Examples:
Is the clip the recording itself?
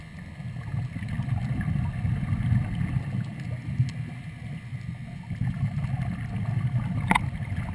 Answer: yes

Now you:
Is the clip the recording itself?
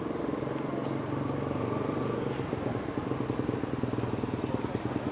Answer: yes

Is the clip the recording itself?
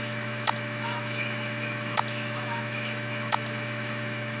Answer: no